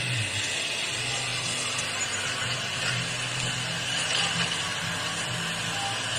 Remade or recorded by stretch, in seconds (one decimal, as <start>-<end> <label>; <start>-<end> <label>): 0.0-6.2 recorded